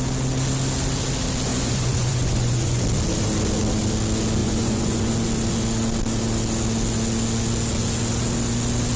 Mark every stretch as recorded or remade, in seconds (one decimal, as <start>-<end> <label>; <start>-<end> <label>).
0.0-1.5 recorded; 1.5-2.8 remade; 2.8-4.4 recorded; 4.4-5.1 remade; 5.1-9.0 recorded